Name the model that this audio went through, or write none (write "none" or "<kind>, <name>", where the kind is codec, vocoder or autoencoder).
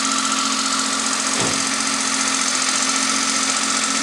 none